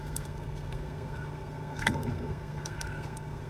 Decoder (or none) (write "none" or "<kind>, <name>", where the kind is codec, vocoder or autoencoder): codec, SNAC